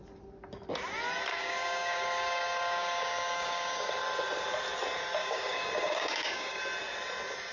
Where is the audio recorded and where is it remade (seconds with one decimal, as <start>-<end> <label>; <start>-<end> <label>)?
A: 0.0-1.3 recorded; 1.3-3.9 remade; 3.9-5.2 recorded; 5.2-6.6 remade; 6.6-7.5 recorded